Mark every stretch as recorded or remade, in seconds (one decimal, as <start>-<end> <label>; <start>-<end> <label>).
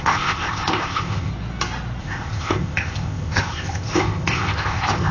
0.0-1.3 remade; 1.3-2.0 recorded; 2.0-5.1 remade